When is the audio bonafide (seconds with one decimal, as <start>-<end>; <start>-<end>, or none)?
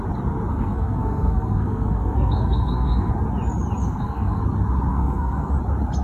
0.0-0.5; 3.1-3.8; 4.4-4.9; 5.5-6.0